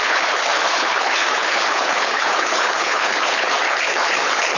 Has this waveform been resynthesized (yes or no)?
yes